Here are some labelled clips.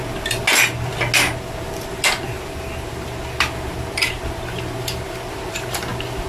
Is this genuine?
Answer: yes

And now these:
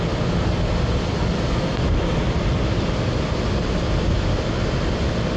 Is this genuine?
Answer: yes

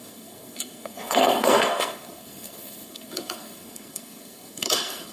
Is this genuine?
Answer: no